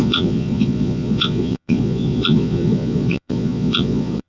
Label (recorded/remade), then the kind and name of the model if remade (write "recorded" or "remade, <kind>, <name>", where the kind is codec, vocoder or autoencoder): remade, vocoder, Vocos